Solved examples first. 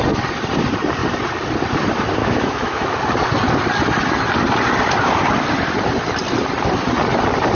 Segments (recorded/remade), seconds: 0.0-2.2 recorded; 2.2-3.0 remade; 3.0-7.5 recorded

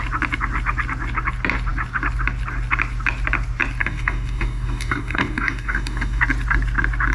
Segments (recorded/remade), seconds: 0.0-3.8 recorded; 3.8-6.2 remade; 6.2-7.1 recorded